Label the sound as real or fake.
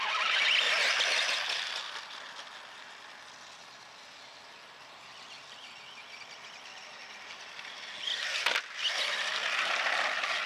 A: real